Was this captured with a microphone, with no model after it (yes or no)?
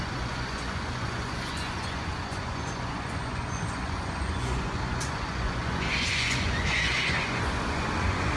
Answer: no